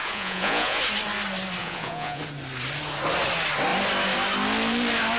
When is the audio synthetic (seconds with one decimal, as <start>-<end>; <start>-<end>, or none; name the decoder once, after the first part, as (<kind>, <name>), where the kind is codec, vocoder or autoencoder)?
0.0-0.8 (vocoder, Vocos); 1.6-2.2